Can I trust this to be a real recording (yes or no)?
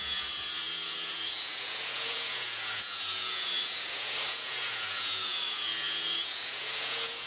no